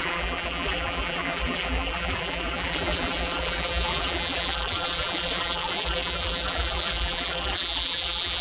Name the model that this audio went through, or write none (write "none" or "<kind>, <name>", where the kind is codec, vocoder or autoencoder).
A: vocoder, BigVGAN v2